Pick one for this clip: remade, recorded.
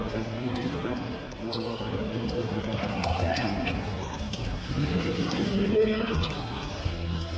remade